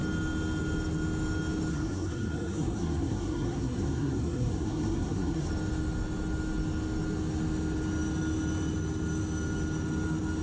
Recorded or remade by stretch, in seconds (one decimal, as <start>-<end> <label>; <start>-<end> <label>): 0.0-1.7 recorded; 1.7-5.5 remade; 5.5-10.4 recorded